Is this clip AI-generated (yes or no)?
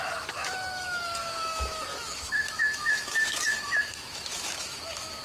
yes